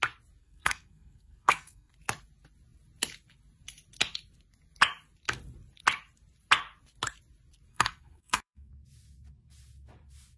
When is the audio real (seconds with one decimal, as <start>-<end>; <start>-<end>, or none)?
0.0-0.4; 1.9-7.7; 8.7-10.4